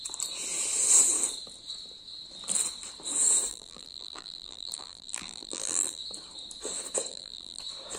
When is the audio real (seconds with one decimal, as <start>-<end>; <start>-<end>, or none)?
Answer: 0.0-3.5; 6.0-7.1; 7.6-8.0